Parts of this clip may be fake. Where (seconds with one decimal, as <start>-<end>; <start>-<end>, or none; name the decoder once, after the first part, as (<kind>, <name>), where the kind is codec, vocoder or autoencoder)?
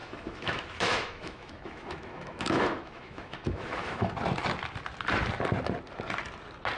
0.0-4.1 (autoencoder, DAC-VAE)